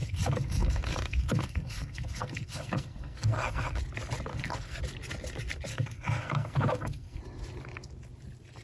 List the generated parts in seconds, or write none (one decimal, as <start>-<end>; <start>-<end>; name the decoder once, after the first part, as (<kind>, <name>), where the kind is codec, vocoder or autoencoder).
0.0-3.8 (codec, SNAC); 4.3-4.8; 5.7-7.2